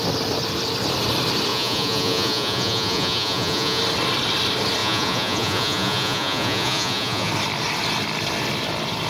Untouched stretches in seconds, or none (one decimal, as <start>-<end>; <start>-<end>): 0.0-1.5; 3.8-4.8; 7.3-9.1